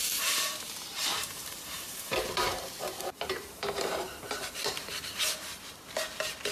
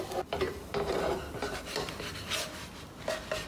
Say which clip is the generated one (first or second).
first